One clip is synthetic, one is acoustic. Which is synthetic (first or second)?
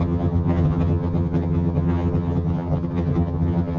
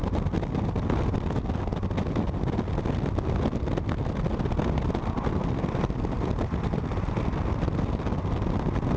first